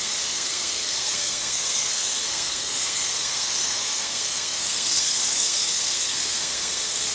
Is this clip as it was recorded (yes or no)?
no